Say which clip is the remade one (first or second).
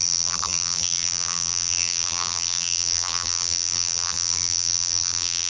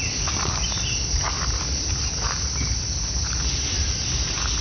first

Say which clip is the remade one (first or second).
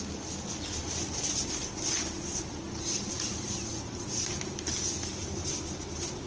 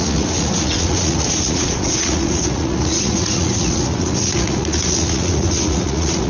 second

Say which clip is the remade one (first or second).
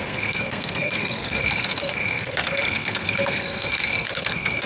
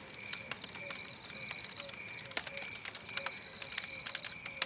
first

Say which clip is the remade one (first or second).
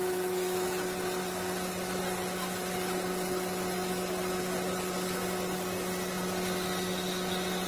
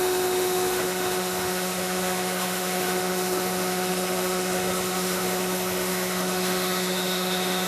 second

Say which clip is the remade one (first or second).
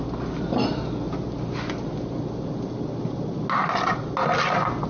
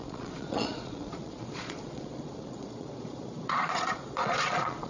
second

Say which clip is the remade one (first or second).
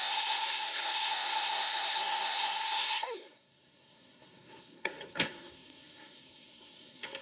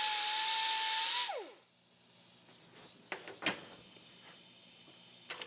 first